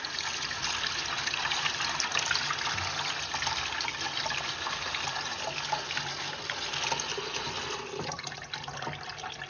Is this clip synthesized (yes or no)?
no